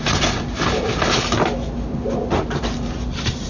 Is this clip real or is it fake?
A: real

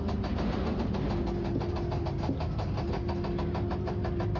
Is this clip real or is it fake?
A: real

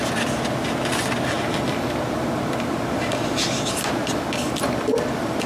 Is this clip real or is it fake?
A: real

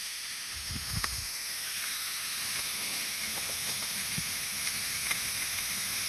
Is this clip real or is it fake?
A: fake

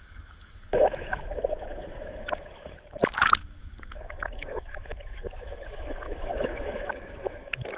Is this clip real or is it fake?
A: fake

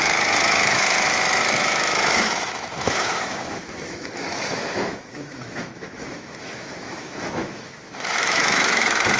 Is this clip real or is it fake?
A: fake